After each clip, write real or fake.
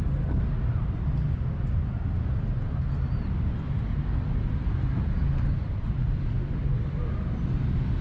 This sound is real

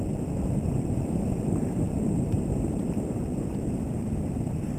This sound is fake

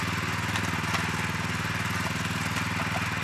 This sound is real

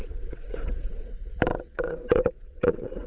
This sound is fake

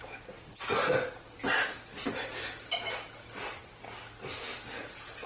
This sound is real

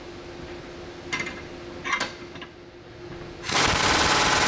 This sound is real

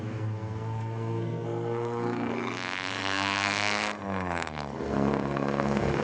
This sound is fake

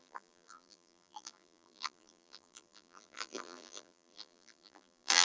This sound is fake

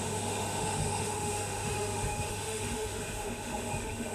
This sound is fake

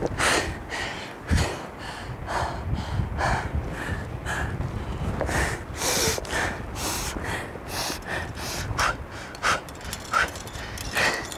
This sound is real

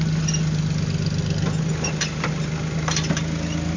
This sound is real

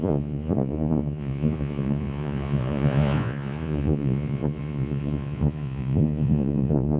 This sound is fake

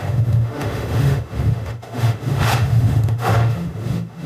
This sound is fake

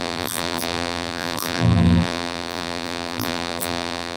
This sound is fake